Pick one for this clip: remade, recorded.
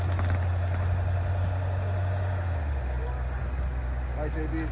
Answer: recorded